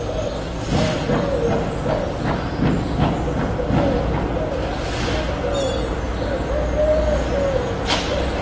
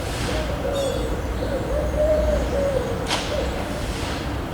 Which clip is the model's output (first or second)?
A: second